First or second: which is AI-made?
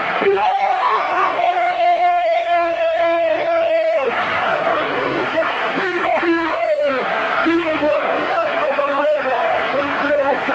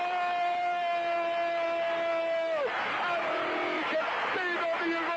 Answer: first